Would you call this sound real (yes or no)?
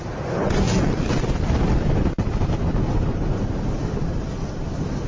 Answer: yes